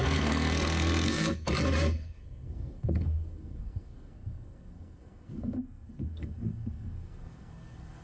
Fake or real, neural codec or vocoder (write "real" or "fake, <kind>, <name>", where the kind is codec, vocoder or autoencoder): fake, codec, SNAC